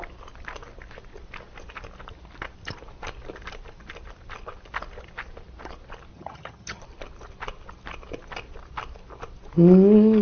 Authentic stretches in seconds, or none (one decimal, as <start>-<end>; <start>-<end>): 0.0-6.1; 6.8-10.2